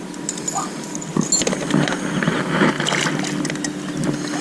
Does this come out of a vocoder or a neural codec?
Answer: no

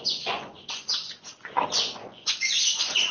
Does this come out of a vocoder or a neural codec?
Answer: yes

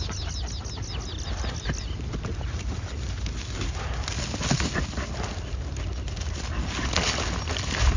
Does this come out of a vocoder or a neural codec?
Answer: no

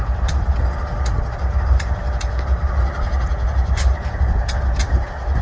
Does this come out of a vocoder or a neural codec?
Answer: no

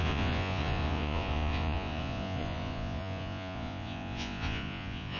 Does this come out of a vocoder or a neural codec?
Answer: yes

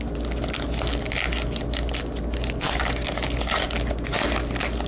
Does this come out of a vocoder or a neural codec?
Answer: no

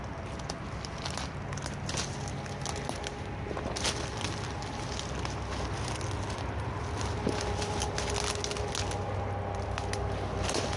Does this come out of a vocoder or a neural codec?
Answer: no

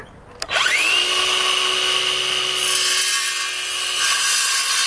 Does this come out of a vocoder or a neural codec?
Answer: no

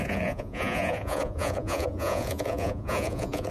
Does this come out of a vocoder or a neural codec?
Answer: yes